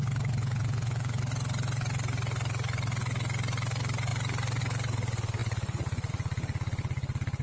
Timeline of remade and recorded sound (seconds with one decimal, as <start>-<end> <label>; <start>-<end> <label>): 0.0-0.4 recorded; 0.4-1.2 remade; 1.2-7.4 recorded